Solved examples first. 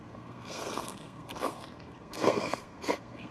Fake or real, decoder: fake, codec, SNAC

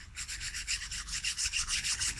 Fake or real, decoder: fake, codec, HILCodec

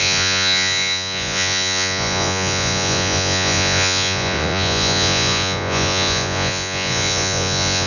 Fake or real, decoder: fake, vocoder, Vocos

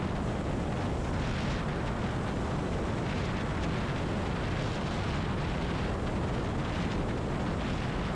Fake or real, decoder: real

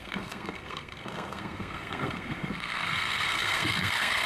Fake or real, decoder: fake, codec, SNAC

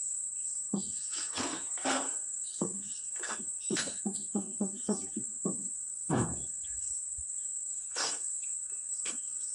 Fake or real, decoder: fake, codec, SNAC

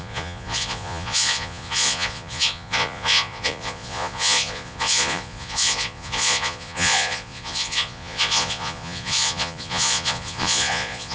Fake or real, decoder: fake, vocoder, Vocos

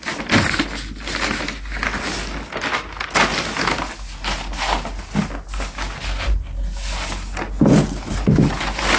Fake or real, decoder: real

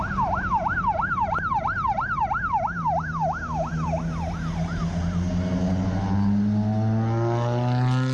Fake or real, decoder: real